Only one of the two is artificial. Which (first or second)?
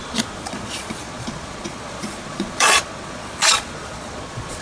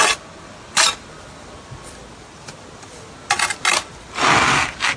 first